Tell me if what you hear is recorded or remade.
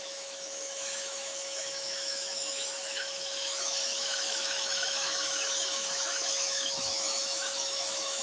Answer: remade